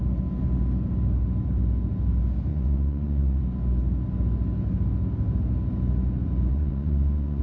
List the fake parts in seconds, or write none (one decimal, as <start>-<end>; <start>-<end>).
2.5-3.4; 6.5-7.4